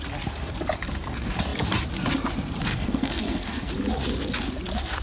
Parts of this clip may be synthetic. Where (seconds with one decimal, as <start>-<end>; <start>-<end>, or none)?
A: 2.7-3.7

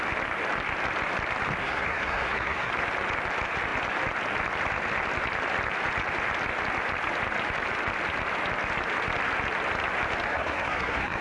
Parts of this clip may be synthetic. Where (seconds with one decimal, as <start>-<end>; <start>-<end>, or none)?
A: 1.6-2.7; 10.3-11.2